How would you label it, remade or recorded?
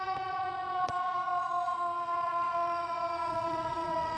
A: remade